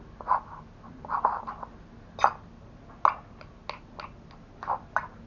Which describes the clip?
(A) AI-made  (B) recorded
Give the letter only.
B